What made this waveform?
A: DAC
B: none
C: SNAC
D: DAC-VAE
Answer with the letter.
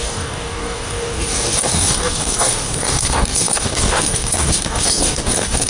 A